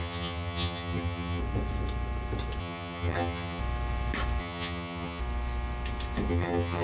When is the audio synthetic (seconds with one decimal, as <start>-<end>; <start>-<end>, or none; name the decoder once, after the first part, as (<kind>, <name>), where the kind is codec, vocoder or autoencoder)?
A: 0.0-1.4 (vocoder, HiFi-GAN); 2.6-3.6; 4.4-5.2; 6.3-6.8